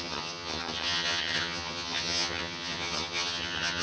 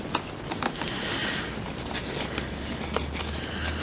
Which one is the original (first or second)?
second